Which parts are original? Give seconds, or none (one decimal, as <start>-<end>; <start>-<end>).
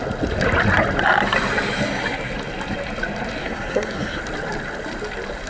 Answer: 0.0-3.4; 4.2-5.5